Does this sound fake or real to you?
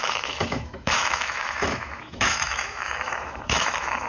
fake